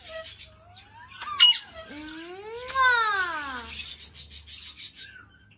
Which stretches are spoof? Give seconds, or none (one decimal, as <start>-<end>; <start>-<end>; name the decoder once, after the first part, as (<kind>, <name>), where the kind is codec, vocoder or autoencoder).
none